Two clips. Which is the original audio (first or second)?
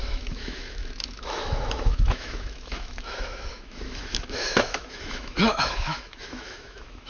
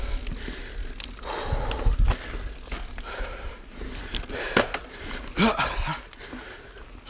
second